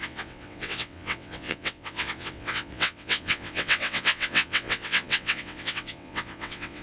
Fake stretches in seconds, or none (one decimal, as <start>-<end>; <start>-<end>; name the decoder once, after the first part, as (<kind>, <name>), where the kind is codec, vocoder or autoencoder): 0.0-6.8 (vocoder, WaveNeXt)